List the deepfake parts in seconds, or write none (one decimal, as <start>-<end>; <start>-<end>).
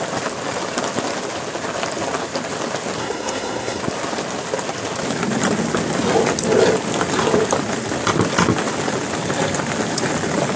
3.0-3.8